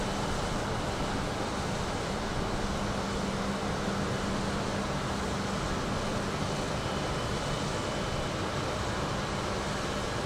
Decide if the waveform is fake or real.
real